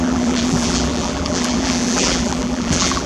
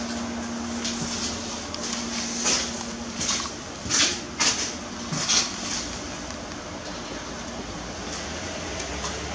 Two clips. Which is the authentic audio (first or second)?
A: second